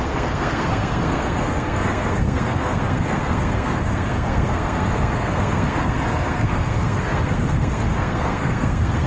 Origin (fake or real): fake